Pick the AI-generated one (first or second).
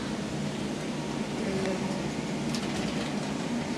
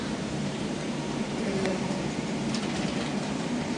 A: second